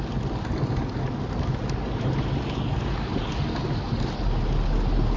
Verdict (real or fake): real